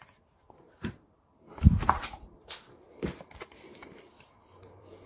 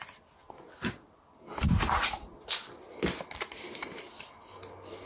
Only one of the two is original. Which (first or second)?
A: second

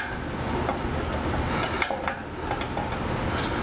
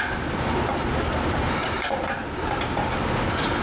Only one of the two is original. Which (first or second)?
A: first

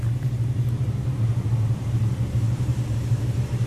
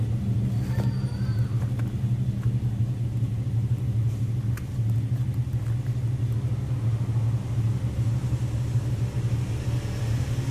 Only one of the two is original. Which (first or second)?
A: second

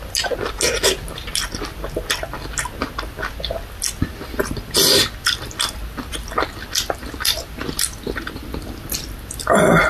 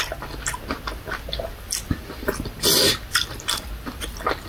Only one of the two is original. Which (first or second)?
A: first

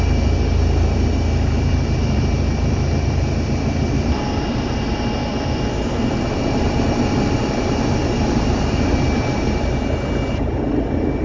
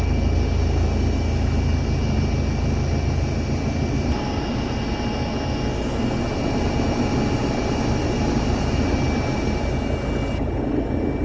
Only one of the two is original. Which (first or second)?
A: second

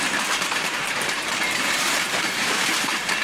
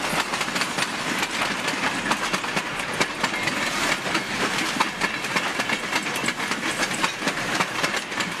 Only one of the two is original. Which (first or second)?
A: second